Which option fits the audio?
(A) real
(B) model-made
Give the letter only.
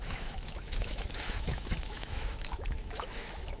B